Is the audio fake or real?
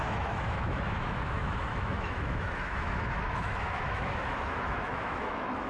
fake